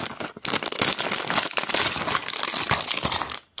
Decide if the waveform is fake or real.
real